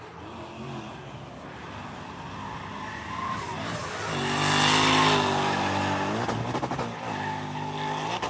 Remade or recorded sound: recorded